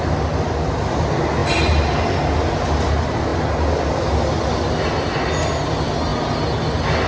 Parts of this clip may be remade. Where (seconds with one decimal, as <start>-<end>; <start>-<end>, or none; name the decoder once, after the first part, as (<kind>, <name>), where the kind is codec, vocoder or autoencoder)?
none